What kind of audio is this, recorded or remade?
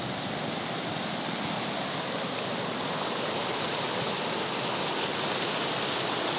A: recorded